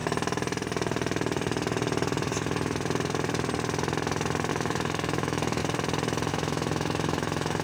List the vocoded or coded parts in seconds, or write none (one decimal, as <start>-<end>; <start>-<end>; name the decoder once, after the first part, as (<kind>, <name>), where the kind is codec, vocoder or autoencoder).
4.5-5.6 (autoencoder, DAC-VAE); 6.3-7.6